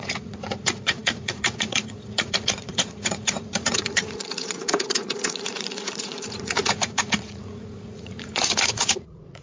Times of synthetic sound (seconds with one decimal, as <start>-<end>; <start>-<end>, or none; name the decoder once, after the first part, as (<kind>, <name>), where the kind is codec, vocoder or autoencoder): 0.0-9.4 (vocoder, Vocos)